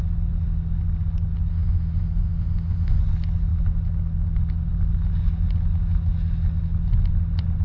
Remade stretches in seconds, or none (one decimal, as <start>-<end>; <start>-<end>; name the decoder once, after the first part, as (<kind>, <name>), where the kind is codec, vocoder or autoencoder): 1.5-3.0 (autoencoder, DAC-VAE)